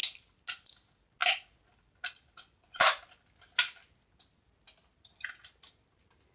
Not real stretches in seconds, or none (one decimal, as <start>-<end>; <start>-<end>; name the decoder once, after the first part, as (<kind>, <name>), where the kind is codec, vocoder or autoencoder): none